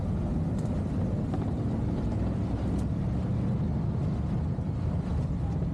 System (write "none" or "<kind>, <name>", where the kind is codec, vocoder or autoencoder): vocoder, BigVGAN v2